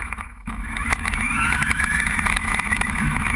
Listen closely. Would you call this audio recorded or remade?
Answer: remade